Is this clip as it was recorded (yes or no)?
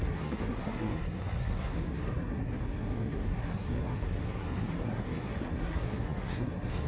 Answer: no